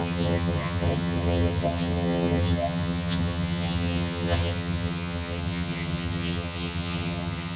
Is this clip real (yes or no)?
no